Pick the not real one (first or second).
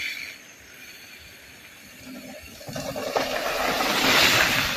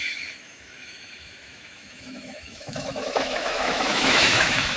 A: second